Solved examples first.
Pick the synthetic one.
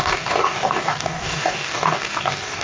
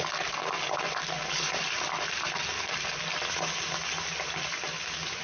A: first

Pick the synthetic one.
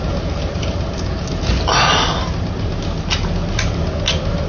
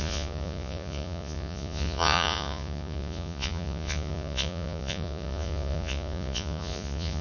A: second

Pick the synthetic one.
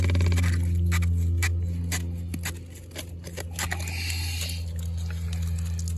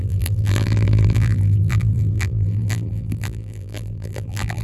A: second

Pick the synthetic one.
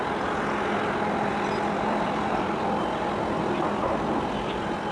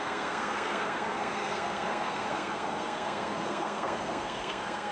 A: second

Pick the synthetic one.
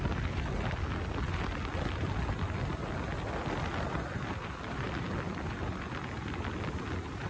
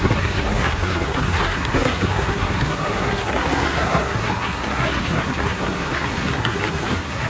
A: second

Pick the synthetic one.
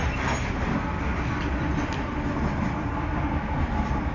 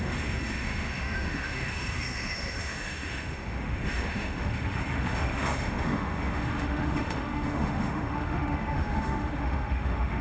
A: second